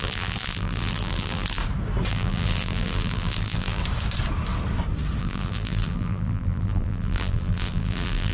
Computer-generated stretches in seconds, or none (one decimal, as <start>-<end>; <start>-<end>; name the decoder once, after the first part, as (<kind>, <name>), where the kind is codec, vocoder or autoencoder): 0.0-1.6 (vocoder, BigVGAN v2); 2.1-3.8; 5.2-8.3